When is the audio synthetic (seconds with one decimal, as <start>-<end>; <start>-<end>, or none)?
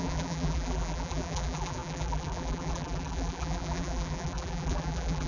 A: 0.0-5.3